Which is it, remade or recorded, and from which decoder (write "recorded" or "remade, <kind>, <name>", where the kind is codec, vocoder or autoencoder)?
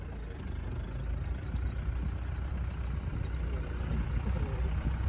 recorded